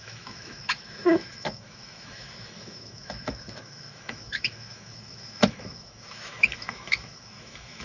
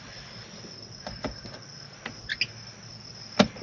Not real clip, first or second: first